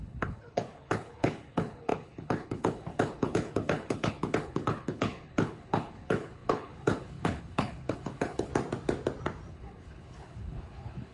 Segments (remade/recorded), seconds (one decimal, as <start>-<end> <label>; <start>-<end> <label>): 0.0-8.5 remade; 8.5-9.5 recorded; 9.5-11.1 remade

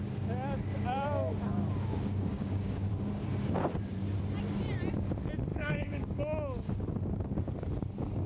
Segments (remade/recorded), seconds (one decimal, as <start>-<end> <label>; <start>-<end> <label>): 0.0-2.3 recorded; 2.3-2.9 remade; 2.9-5.5 recorded; 5.5-6.2 remade; 6.2-8.3 recorded

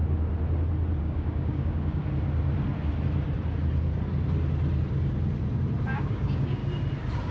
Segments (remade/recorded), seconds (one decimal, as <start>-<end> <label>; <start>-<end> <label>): 0.0-1.0 recorded; 1.0-2.0 remade; 2.0-5.9 recorded; 5.9-6.6 remade; 6.6-7.3 recorded

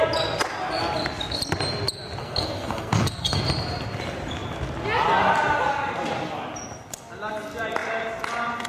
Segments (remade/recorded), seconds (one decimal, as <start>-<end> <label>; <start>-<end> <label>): 0.0-2.2 recorded; 2.2-3.4 remade; 3.4-8.7 recorded

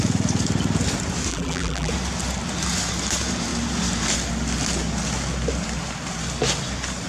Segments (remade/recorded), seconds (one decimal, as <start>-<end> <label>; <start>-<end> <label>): 0.0-1.3 recorded; 1.3-1.9 remade; 1.9-7.1 recorded